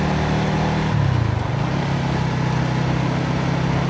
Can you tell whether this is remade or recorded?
recorded